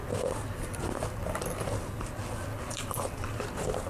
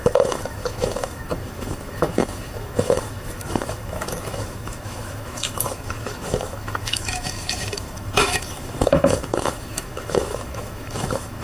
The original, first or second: first